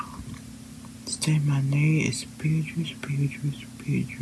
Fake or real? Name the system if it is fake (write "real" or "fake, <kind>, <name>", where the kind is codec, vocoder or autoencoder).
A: real